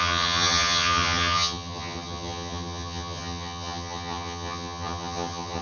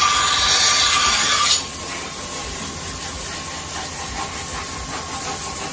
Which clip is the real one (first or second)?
second